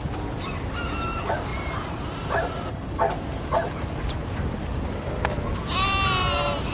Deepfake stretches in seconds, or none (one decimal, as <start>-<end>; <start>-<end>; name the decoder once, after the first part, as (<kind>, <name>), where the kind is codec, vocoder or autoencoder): none